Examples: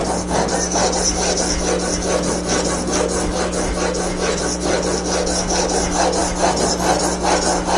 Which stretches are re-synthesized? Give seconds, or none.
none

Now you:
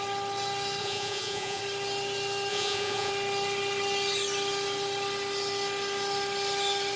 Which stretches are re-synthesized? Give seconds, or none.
0.8-1.6 (vocoder, Vocos); 2.5-3.1

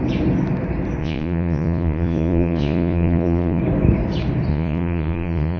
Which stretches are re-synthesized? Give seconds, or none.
1.0-3.6 (vocoder, Vocos); 4.5-5.6

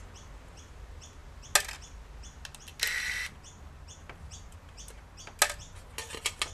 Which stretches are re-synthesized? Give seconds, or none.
none

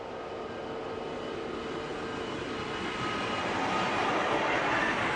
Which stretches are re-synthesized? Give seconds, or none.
none

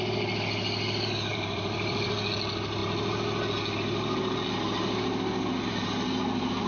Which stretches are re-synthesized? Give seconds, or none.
1.3-2.1 (vocoder, BigVGAN v2)

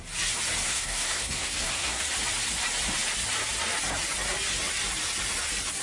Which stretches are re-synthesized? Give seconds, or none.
0.6-2.0 (codec, SNAC)

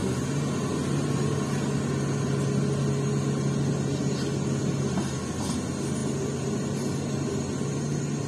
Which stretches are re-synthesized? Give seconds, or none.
none